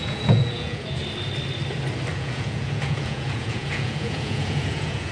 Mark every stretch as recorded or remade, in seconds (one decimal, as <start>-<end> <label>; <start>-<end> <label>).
0.0-1.0 remade; 1.0-2.1 recorded; 2.1-5.1 remade